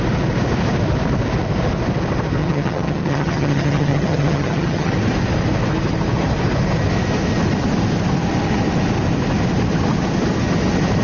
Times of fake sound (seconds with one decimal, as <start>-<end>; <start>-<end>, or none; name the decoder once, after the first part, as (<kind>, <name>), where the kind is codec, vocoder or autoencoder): 2.4-4.9 (vocoder, HiFi-GAN)